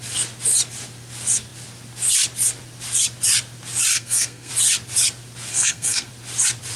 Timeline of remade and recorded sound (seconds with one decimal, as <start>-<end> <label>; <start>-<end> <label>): 0.0-3.9 recorded; 3.9-4.5 remade; 4.5-5.5 recorded; 5.5-6.1 remade; 6.1-6.8 recorded